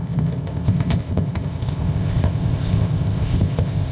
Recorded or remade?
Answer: remade